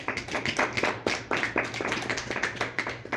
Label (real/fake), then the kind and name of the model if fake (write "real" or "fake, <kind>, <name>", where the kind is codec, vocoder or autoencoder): real